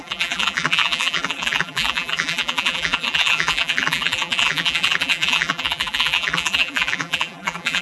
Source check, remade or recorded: remade